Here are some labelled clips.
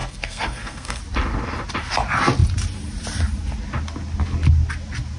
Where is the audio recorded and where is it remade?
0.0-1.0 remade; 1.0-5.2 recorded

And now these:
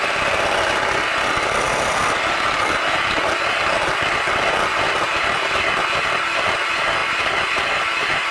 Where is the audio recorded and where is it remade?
0.0-8.3 recorded

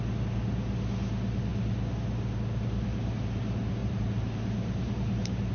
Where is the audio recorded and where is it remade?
0.0-3.8 recorded; 3.8-5.5 remade

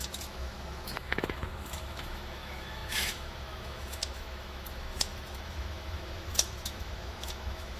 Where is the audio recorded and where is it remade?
0.0-7.8 remade

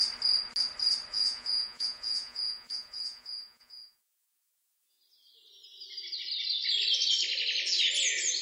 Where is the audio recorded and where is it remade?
0.0-1.1 recorded; 1.1-5.0 remade; 5.0-8.4 recorded

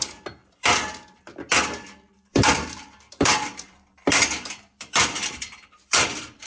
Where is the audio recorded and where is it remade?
0.0-0.4 recorded; 0.4-1.2 remade; 1.2-2.3 recorded; 2.3-6.5 remade

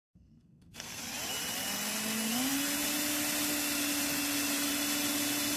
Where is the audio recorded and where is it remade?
0.0-1.0 remade; 1.0-5.6 recorded